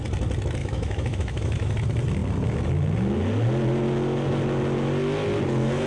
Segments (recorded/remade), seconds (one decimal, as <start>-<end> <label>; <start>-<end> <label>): 0.0-0.6 recorded; 0.6-1.7 remade; 1.7-5.9 recorded